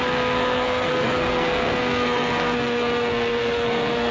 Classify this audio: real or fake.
fake